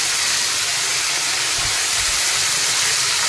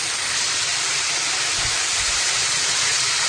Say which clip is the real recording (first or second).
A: first